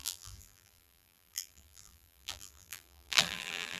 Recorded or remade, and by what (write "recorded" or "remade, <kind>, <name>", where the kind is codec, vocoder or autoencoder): remade, vocoder, BigVGAN v2